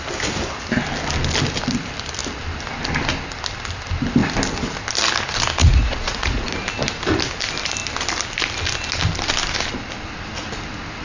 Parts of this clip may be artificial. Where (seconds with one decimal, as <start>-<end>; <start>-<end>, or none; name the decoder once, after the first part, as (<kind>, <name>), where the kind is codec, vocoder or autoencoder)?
5.6-6.5 (vocoder, Vocos)